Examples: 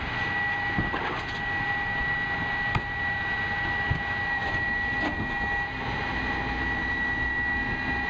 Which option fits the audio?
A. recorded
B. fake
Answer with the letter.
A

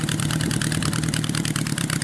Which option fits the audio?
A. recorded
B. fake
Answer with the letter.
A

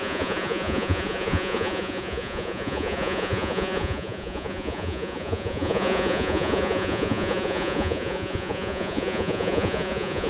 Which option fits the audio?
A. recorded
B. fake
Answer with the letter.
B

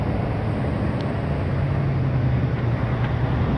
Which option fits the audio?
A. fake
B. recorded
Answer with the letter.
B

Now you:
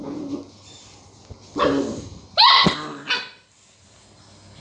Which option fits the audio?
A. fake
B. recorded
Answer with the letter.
B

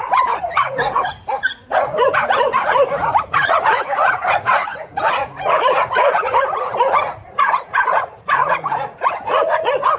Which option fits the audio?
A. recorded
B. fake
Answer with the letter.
B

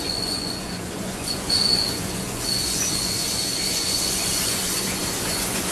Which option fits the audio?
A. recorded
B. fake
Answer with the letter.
B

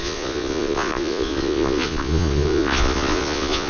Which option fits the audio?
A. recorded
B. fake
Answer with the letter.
B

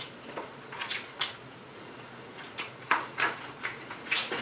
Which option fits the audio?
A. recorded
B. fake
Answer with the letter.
B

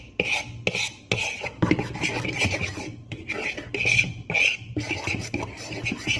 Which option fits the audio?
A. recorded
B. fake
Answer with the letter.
A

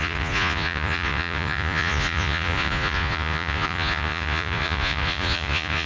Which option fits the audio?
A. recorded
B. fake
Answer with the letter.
B